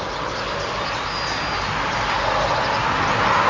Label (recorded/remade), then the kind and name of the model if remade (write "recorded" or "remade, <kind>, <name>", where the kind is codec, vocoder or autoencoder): recorded